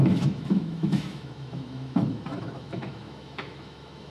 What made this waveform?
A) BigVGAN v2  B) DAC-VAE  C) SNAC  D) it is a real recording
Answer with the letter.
B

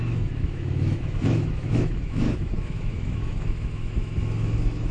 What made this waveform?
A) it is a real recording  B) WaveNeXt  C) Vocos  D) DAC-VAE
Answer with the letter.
D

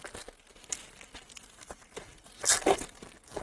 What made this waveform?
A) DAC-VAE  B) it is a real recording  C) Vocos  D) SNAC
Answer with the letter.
B